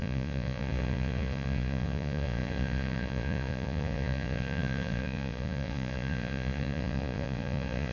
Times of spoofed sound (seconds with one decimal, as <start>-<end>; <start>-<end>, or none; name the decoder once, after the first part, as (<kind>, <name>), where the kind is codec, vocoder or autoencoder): 0.0-7.9 (vocoder, Vocos)